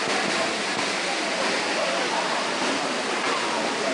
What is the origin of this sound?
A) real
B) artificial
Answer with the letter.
B